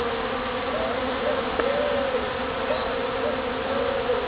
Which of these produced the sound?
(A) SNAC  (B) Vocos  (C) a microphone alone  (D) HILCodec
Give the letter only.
C